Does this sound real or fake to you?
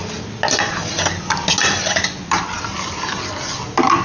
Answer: real